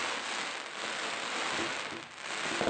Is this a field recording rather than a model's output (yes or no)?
yes